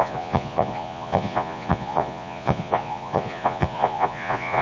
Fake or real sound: fake